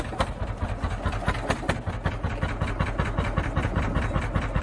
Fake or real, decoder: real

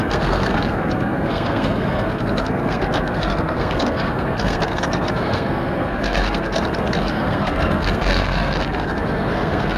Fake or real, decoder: fake, codec, SNAC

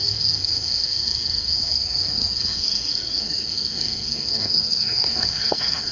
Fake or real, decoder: fake, codec, SNAC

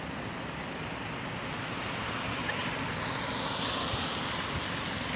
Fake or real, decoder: real